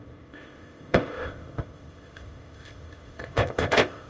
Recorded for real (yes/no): no